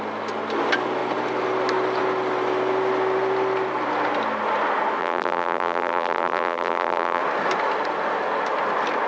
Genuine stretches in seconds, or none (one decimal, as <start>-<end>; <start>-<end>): 0.0-5.0; 7.2-9.1